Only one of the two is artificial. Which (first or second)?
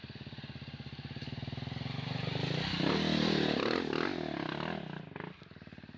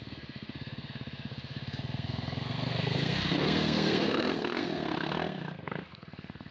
second